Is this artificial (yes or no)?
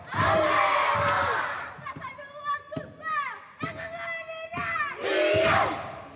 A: no